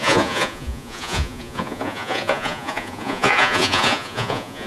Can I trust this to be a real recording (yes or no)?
no